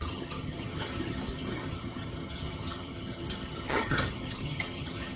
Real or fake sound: fake